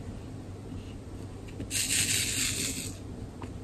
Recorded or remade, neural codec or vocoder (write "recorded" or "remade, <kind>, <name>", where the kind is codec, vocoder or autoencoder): recorded